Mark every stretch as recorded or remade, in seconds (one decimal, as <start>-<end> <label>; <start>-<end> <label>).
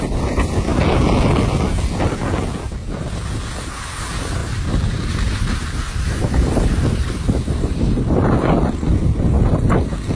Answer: 0.0-4.4 recorded; 4.4-8.0 remade; 8.0-10.1 recorded